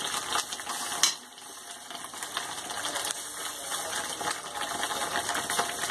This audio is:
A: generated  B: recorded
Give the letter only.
B